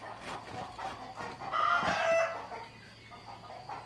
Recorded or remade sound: recorded